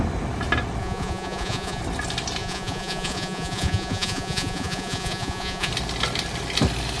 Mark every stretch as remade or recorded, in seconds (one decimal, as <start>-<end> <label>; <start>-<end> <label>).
0.0-0.8 recorded; 0.8-1.8 remade; 1.8-2.4 recorded; 2.4-5.7 remade; 5.7-7.0 recorded